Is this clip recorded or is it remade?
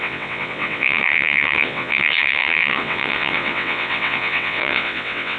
remade